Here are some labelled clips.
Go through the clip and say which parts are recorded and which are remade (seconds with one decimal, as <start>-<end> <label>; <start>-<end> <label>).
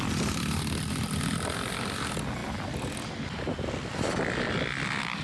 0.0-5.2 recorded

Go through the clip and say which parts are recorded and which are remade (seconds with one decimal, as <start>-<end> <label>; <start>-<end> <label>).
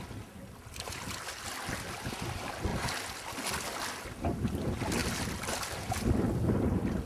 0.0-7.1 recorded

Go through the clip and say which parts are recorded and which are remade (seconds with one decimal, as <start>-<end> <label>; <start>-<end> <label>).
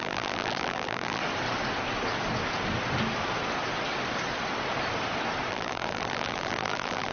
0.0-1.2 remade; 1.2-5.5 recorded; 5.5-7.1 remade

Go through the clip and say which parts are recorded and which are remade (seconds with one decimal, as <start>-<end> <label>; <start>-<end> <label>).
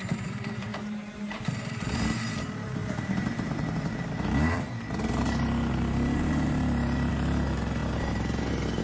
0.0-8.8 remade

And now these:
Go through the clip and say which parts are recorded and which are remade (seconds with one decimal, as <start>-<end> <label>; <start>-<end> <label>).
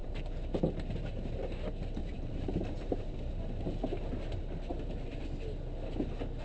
0.0-1.3 remade; 1.3-2.0 recorded; 2.0-4.3 remade; 4.3-4.7 recorded; 4.7-5.2 remade; 5.2-6.4 recorded